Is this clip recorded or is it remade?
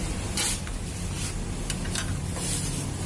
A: recorded